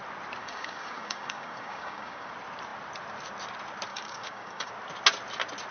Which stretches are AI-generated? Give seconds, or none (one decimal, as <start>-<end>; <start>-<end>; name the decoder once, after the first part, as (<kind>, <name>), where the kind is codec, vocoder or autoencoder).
0.4-2.3 (codec, DAC); 3.9-4.7